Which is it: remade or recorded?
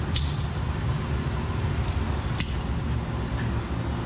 recorded